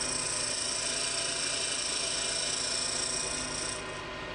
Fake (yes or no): no